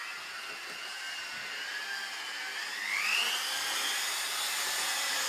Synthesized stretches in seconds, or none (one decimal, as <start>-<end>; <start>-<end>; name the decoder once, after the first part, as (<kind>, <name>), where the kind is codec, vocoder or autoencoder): 0.0-5.3 (vocoder, BigVGAN v2)